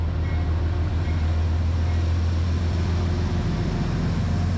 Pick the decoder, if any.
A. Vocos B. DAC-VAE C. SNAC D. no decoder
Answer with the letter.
D